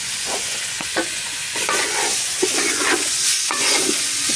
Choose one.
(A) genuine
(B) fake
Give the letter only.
B